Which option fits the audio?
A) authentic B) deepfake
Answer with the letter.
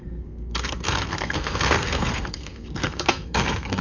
B